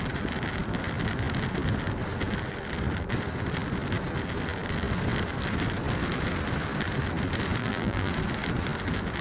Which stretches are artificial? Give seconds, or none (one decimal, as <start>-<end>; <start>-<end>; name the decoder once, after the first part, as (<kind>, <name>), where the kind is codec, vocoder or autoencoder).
7.6-8.1 (vocoder, BigVGAN v2)